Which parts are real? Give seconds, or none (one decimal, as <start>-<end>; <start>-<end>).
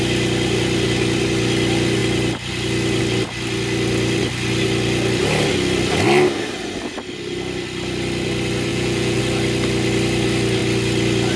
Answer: 0.0-8.7; 9.2-11.4